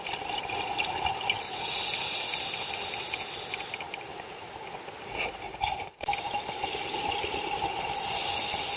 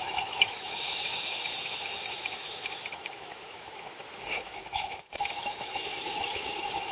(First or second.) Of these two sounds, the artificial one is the second